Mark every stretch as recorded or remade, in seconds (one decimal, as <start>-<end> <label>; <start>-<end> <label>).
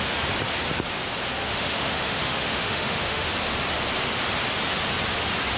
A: 0.0-1.4 recorded; 1.4-3.3 remade; 3.3-5.6 recorded